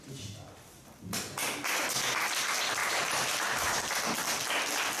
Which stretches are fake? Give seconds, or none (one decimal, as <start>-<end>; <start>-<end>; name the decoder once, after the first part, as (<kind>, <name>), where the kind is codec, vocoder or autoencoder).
2.8-3.8 (vocoder, BigVGAN v2)